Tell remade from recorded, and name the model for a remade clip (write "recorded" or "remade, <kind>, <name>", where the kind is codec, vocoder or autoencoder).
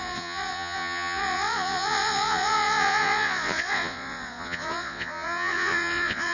remade, vocoder, Vocos